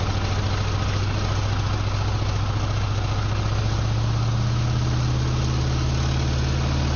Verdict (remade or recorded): recorded